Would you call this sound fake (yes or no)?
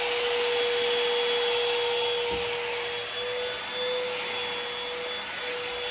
no